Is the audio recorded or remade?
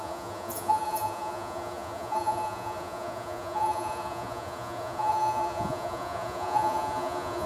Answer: remade